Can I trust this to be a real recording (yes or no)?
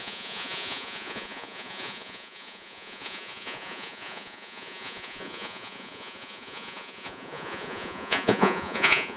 no